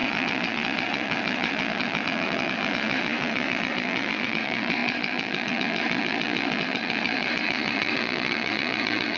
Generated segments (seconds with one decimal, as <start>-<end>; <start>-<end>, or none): 0.0-9.2